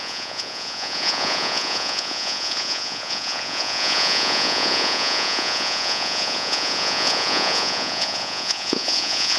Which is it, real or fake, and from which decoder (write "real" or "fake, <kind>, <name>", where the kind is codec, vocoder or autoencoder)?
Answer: fake, vocoder, Vocos